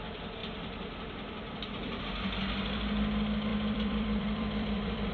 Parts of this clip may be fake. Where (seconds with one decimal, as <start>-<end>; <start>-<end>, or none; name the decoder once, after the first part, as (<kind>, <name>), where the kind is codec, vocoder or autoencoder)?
0.4-2.0 (vocoder, BigVGAN v2); 3.5-5.1